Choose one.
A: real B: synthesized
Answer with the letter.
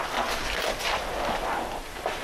A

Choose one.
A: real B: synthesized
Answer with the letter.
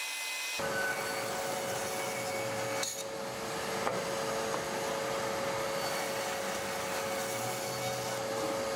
A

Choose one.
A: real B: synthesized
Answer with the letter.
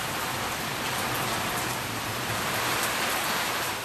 B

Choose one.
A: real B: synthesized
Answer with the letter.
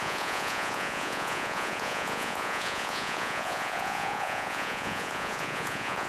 B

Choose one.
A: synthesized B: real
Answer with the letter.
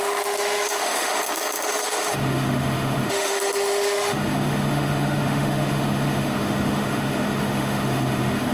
A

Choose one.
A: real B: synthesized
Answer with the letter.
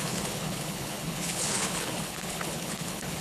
B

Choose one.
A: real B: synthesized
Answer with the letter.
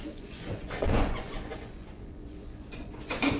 B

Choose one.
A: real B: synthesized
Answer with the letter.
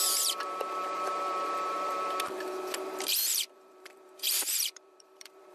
B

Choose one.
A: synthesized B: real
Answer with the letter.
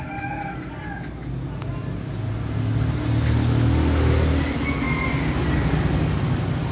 B